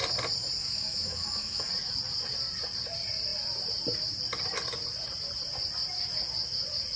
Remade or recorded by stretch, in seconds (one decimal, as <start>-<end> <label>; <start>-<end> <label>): 0.0-0.6 recorded; 0.6-1.7 remade; 1.7-7.0 recorded

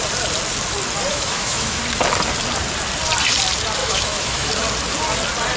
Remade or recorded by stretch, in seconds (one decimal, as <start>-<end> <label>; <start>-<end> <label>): 0.0-1.1 recorded; 1.1-1.8 remade; 1.8-3.8 recorded; 3.8-4.5 remade; 4.5-5.6 recorded

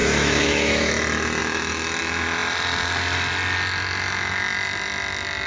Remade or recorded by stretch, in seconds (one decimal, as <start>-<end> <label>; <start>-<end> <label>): 0.0-0.9 remade; 0.9-5.5 recorded

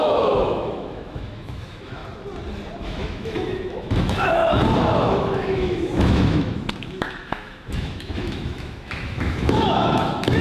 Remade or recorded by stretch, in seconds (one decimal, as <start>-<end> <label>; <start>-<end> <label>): 0.0-2.0 remade; 2.0-2.8 recorded; 2.8-4.4 remade; 4.4-5.0 recorded; 5.0-10.4 remade

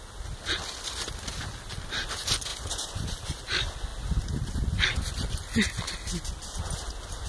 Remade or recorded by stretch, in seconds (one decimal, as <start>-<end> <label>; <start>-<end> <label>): 0.0-7.3 recorded